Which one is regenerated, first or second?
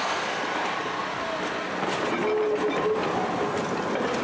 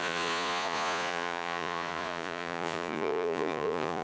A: second